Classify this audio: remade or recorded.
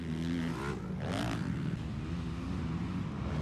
recorded